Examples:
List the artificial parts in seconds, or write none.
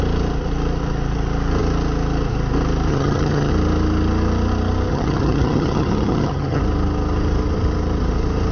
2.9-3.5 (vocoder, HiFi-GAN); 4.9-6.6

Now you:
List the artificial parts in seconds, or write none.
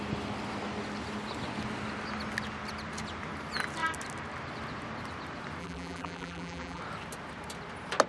5.6-6.8 (vocoder, BigVGAN v2)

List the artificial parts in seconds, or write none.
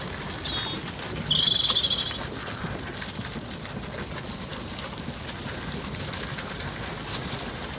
none